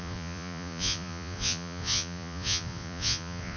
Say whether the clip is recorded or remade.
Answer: remade